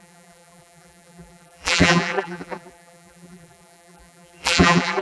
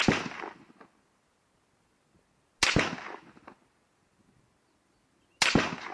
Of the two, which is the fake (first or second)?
first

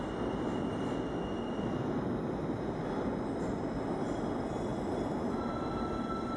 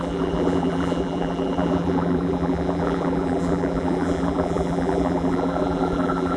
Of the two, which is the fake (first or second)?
second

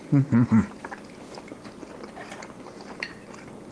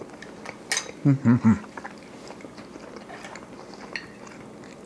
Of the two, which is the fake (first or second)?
first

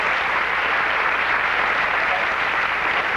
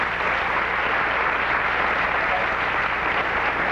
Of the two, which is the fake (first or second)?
first